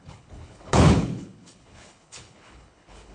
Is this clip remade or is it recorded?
remade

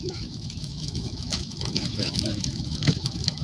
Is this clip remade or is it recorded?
remade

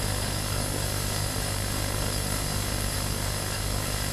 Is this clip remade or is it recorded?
remade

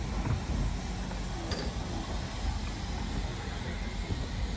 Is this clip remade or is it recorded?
recorded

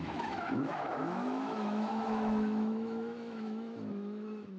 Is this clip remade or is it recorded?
remade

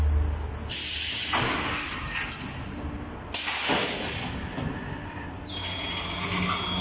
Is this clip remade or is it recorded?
recorded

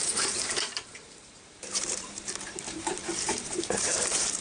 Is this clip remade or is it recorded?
remade